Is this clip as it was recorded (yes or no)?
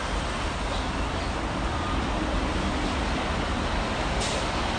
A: yes